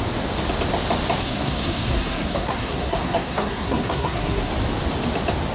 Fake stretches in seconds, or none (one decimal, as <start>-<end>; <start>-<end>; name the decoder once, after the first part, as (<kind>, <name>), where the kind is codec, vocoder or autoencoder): 1.2-4.5 (codec, SNAC)